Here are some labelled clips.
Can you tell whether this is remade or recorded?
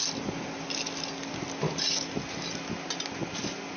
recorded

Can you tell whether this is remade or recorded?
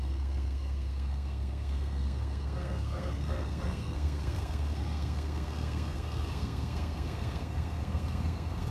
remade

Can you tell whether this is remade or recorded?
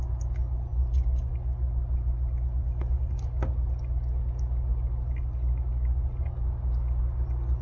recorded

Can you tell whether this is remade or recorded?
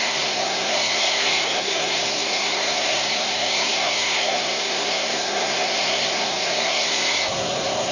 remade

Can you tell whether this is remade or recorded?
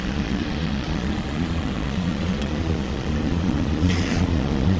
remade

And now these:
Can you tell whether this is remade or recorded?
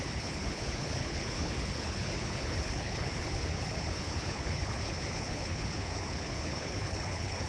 remade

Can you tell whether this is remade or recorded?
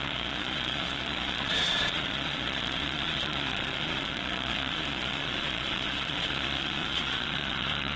remade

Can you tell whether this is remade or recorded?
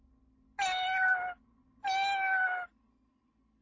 recorded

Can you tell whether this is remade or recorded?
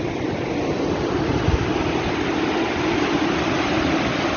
recorded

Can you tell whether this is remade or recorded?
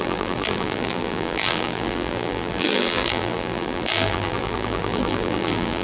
remade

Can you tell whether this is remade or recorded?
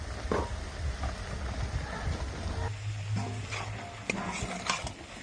recorded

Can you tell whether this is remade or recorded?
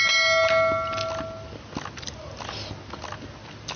recorded